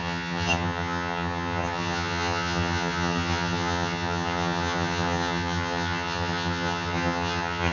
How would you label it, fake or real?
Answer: fake